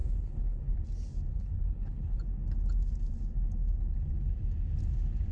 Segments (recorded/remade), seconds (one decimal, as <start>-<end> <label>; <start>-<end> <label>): 0.0-0.6 remade; 0.6-1.3 recorded; 1.3-2.2 remade; 2.2-5.3 recorded